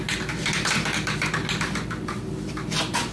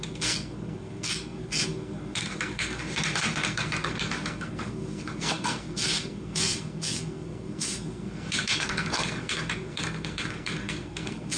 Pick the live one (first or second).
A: first